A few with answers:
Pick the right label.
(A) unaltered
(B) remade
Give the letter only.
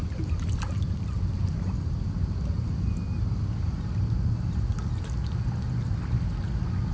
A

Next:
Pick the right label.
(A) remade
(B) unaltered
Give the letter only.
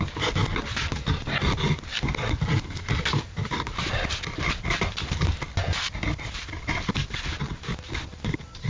B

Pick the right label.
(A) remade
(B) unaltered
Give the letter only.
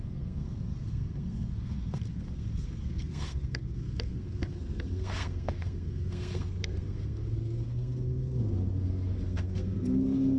A